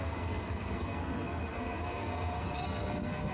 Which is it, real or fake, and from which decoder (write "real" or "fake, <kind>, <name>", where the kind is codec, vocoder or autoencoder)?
fake, codec, SNAC